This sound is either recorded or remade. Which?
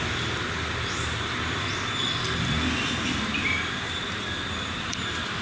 recorded